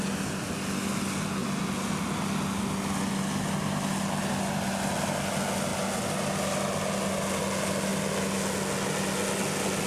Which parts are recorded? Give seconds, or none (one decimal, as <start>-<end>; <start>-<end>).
0.0-9.9